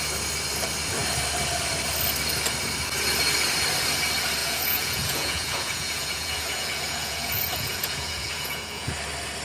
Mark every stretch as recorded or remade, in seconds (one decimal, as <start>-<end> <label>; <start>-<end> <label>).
0.0-4.4 recorded; 4.4-8.9 remade; 8.9-9.4 recorded